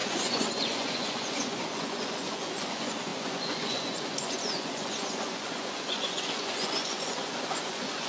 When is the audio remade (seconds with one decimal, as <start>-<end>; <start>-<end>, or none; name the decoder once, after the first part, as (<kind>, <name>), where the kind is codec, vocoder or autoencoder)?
0.0-8.1 (vocoder, Vocos)

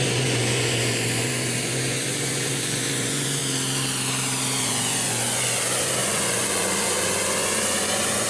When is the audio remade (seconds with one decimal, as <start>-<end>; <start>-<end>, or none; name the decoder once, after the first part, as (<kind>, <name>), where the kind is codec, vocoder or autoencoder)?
0.0-3.4 (vocoder, Vocos); 4.6-8.3

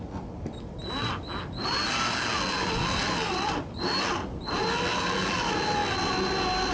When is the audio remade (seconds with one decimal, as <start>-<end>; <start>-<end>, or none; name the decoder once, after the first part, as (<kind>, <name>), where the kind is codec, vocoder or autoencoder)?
none

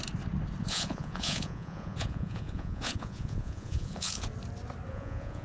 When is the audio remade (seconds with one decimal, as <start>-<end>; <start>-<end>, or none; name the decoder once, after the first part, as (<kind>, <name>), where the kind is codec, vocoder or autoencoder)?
0.6-4.3 (vocoder, Vocos); 4.9-5.4

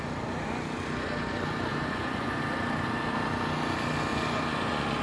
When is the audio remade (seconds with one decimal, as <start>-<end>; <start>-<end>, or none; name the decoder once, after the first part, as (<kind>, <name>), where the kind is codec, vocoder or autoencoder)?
1.7-2.4 (vocoder, Vocos); 4.1-5.0